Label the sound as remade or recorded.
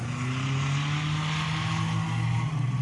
recorded